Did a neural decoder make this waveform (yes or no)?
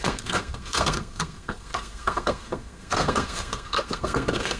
yes